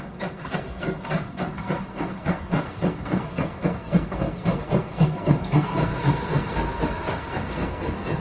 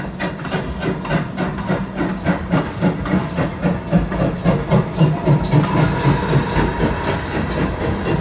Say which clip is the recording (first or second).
second